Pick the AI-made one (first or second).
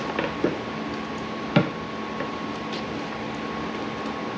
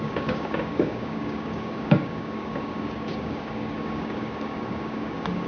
second